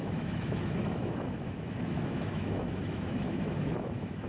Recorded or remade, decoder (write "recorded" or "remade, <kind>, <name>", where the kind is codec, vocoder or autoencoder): remade, autoencoder, DAC-VAE